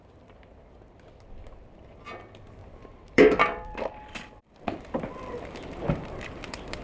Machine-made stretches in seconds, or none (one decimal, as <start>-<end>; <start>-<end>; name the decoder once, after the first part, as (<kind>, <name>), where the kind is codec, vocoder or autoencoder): 2.6-6.8 (vocoder, BigVGAN v2)